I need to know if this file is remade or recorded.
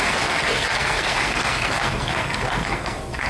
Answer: remade